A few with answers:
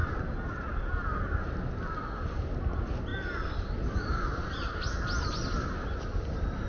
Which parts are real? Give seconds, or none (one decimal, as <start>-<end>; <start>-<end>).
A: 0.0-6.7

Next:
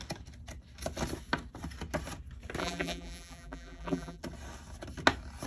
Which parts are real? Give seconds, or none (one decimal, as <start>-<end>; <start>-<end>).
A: 0.0-2.6; 4.2-5.5

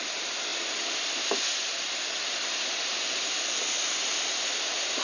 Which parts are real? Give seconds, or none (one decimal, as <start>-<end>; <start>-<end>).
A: 0.0-0.5; 3.5-5.0

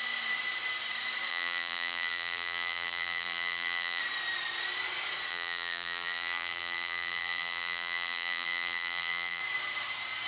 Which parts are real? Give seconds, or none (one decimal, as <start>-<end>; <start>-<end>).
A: 0.0-1.3; 4.0-5.3; 9.4-10.3

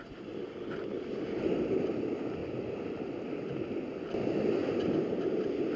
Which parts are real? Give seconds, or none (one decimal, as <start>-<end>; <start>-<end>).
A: 0.0-5.8

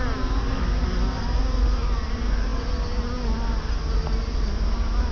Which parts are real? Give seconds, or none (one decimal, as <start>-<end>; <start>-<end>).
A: 0.0-5.1

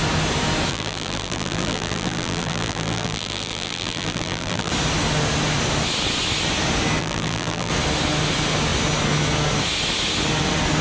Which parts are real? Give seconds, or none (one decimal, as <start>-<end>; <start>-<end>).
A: 0.0-0.7; 4.7-7.0; 7.7-10.8

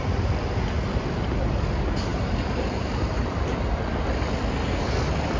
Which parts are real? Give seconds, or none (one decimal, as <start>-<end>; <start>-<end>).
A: 0.0-2.1; 3.4-5.4